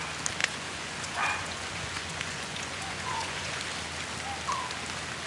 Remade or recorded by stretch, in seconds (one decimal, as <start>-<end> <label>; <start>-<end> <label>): 0.0-0.4 recorded; 0.4-3.6 remade; 3.6-5.3 recorded